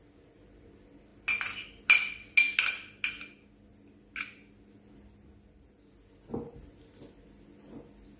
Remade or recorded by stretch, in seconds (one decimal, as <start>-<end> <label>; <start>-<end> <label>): 0.0-8.2 recorded